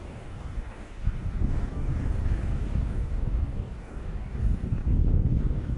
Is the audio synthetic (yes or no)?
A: yes